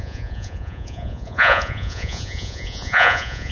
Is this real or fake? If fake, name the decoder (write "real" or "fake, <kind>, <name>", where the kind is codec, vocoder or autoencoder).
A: fake, vocoder, Vocos